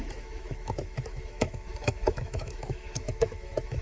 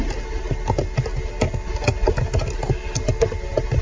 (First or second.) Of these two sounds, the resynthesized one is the first